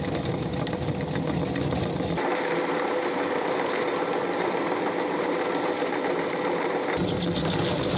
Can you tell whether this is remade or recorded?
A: recorded